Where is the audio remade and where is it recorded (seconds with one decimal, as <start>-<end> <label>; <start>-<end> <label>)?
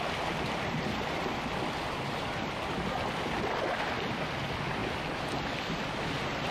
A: 0.0-6.5 recorded